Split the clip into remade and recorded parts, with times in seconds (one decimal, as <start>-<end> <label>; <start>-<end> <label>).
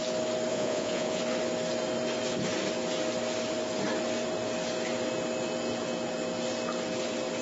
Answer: 0.0-0.5 recorded; 0.5-1.2 remade; 1.2-7.4 recorded